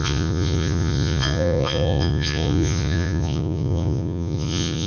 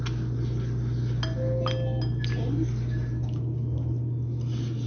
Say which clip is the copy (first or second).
first